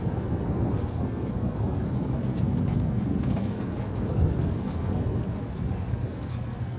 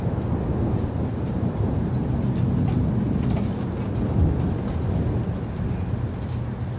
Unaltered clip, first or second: second